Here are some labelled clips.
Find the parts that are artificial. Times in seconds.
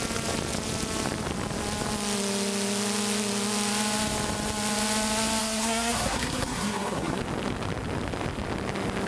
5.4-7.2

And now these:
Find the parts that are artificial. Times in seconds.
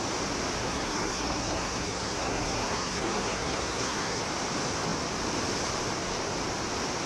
0.6-4.2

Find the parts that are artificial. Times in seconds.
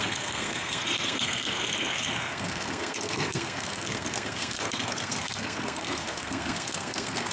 0.0-7.3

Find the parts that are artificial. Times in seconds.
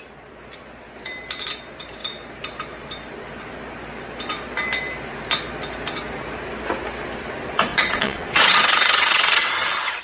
7.7-9.5